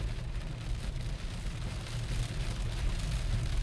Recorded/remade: recorded